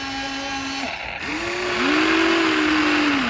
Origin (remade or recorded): recorded